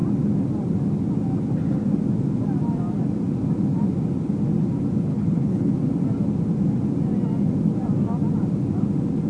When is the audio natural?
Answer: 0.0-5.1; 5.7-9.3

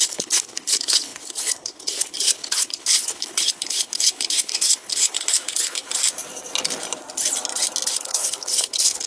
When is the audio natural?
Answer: 5.9-7.9

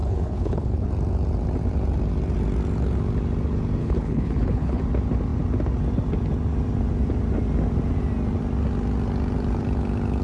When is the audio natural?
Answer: 0.9-3.8; 4.8-10.2

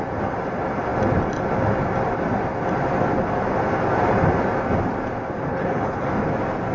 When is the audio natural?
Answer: 0.0-5.5; 6.1-6.7

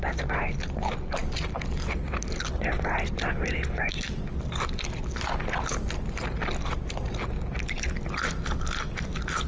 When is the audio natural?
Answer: 0.0-9.5

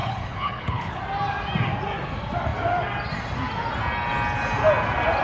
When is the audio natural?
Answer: 1.0-5.2

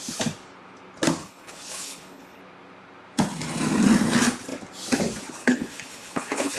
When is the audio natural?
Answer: 0.0-1.2; 2.4-5.4

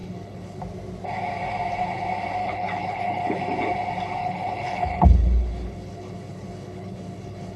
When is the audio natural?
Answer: 0.6-2.4; 3.4-4.2